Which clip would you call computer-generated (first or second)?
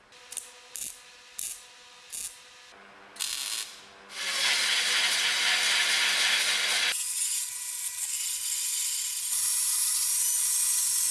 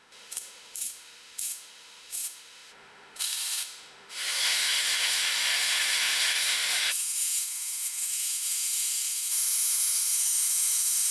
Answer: second